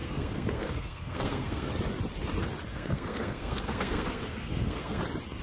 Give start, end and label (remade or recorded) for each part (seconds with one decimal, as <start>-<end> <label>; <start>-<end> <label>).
0.0-1.7 remade; 1.7-2.7 recorded; 2.7-5.0 remade; 5.0-5.4 recorded